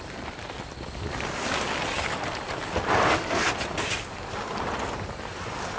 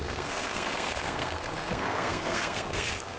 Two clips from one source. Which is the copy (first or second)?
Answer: second